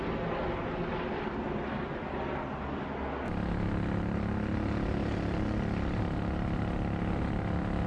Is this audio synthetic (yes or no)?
no